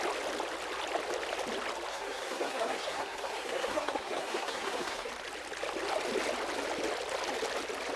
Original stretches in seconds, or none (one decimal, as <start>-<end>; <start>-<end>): 0.0-1.9; 5.1-8.0